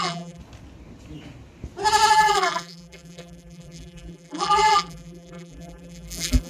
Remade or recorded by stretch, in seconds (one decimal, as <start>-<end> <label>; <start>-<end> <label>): 0.0-0.4 remade; 0.4-2.1 recorded; 2.1-6.5 remade